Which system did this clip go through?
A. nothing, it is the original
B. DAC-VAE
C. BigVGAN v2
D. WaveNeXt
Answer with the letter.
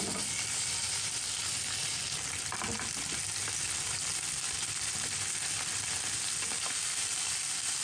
A